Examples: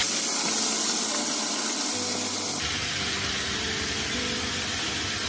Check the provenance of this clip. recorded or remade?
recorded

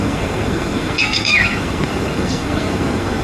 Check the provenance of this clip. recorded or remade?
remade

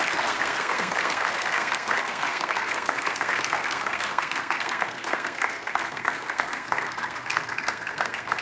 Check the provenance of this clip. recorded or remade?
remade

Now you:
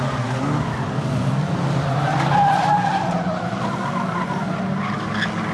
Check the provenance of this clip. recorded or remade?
recorded